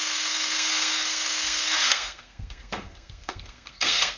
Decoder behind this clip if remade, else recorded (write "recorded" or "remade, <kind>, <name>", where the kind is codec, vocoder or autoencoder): remade, codec, SNAC